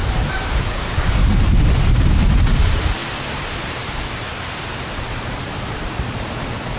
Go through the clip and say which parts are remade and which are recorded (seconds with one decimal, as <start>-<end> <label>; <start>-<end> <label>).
0.0-0.6 remade; 0.6-3.0 recorded; 3.0-3.9 remade; 3.9-4.7 recorded; 4.7-5.9 remade; 5.9-6.8 recorded